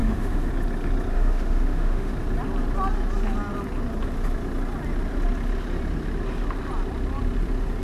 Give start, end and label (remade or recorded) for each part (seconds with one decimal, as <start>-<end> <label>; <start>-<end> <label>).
0.0-0.5 remade; 0.5-1.1 recorded; 1.1-2.1 remade; 2.1-7.8 recorded